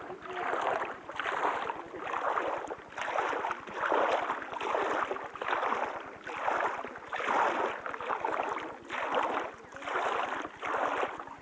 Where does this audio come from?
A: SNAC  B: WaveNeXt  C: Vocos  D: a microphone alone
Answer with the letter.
D